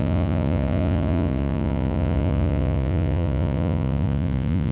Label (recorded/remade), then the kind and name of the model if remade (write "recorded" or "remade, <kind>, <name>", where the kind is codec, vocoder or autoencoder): remade, vocoder, Vocos